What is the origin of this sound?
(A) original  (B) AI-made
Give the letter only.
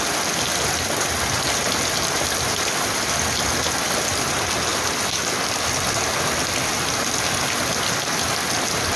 A